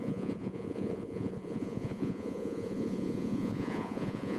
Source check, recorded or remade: remade